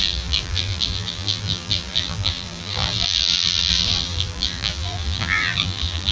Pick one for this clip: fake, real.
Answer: fake